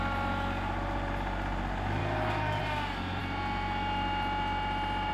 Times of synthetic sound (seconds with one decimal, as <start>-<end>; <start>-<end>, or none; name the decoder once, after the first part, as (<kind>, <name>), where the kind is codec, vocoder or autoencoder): 2.0-2.6 (codec, DAC)